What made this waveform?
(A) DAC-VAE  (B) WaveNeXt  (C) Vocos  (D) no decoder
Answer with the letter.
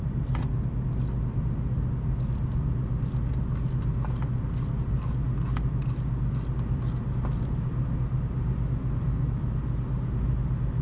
D